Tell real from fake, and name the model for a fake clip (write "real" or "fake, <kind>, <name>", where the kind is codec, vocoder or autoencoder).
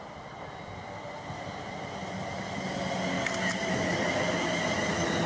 real